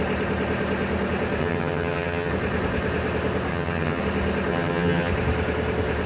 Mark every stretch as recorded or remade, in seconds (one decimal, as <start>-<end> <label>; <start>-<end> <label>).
0.0-1.4 recorded; 1.4-2.3 remade; 2.3-3.5 recorded; 3.5-4.0 remade; 4.0-4.5 recorded; 4.5-5.1 remade; 5.1-6.1 recorded